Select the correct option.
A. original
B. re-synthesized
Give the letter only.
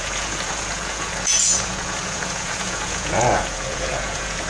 B